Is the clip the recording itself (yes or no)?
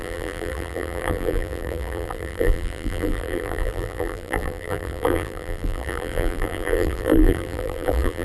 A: no